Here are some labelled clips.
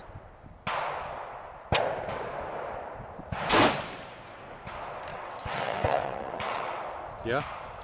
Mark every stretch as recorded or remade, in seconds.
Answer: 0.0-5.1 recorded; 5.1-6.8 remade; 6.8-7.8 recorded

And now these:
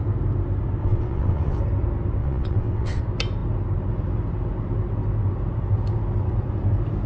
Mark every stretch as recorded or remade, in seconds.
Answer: 0.0-0.8 recorded; 0.8-1.6 remade; 1.6-2.2 recorded; 2.2-3.0 remade; 3.0-7.1 recorded

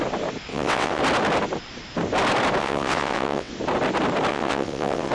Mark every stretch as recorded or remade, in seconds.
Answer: 0.0-0.5 recorded; 0.5-1.0 remade; 1.0-2.6 recorded; 2.6-3.5 remade; 3.5-4.3 recorded; 4.3-5.1 remade

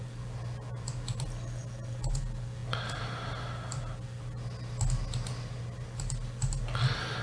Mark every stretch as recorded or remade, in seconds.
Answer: 0.0-7.2 recorded